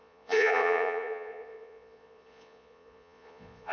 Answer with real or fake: fake